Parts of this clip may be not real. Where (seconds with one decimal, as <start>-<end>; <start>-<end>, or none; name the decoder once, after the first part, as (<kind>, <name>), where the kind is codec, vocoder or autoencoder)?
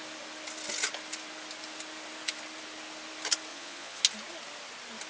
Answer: 3.5-4.0 (vocoder, Vocos)